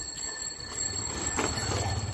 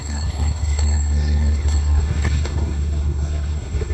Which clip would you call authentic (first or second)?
first